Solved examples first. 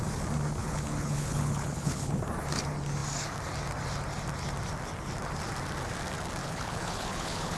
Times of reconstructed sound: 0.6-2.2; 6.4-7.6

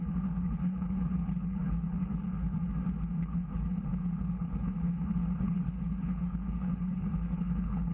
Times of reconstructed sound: 0.0-2.6; 3.2-7.9

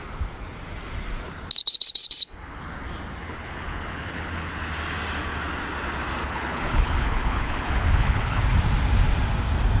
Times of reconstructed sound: 1.6-2.6; 3.2-4.5; 6.2-8.4